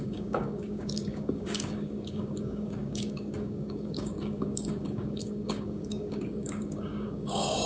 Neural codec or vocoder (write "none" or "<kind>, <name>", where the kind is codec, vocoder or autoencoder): codec, DAC